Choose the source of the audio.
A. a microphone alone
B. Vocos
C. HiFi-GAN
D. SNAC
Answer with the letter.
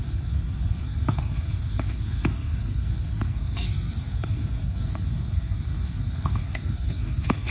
D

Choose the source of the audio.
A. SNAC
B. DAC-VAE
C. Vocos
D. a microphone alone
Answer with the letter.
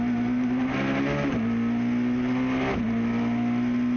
D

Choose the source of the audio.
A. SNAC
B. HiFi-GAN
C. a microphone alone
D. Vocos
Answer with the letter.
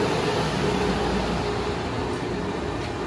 C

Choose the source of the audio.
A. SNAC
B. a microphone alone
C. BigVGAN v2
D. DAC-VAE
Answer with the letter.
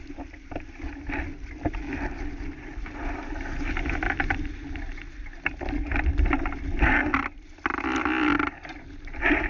B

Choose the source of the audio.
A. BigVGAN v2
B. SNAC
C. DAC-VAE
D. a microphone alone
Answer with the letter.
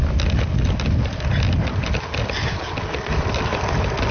D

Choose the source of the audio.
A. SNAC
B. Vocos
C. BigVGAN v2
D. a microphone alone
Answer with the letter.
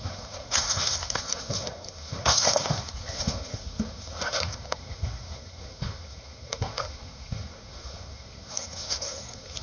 A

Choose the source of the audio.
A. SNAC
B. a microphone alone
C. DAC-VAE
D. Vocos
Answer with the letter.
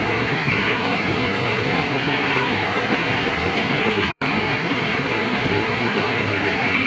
A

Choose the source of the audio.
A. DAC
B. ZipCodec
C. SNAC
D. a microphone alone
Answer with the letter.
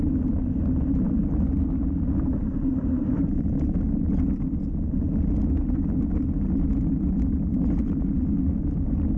D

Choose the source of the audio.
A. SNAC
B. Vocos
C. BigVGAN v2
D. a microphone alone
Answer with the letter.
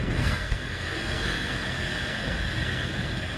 A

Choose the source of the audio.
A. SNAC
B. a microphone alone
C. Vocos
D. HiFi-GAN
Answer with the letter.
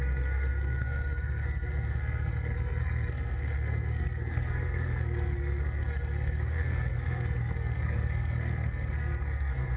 A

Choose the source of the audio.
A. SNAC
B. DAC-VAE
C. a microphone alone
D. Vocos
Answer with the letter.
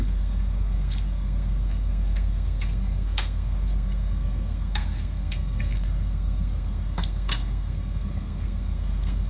A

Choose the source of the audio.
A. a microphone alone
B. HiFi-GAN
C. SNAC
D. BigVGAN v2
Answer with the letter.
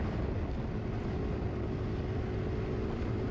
A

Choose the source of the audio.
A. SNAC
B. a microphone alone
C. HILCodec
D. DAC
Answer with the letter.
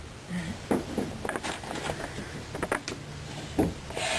B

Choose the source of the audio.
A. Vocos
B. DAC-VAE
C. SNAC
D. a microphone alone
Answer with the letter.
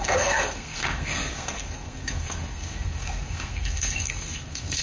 C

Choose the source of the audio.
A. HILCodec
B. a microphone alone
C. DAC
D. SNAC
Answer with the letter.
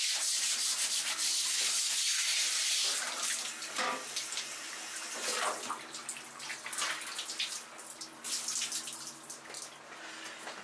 B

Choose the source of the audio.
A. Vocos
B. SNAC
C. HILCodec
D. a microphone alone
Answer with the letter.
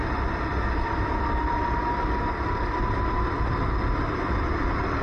D